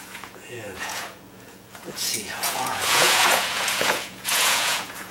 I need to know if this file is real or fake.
fake